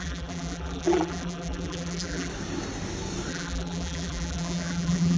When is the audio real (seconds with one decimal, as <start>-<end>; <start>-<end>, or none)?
2.3-3.3